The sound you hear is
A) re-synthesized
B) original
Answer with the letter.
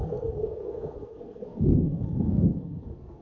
A